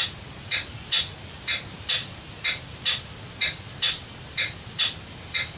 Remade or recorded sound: recorded